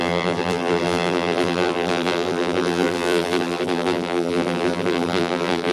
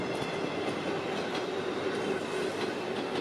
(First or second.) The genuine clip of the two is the second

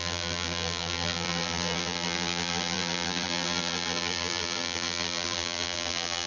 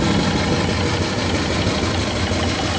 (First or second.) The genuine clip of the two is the second